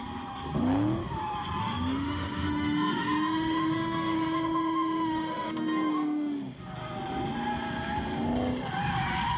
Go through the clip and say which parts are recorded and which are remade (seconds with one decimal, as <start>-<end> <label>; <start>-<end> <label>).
0.0-1.6 recorded; 1.6-6.6 remade; 6.6-9.4 recorded